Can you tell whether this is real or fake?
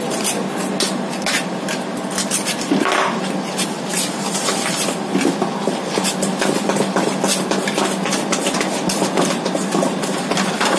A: real